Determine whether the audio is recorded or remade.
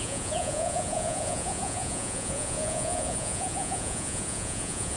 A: remade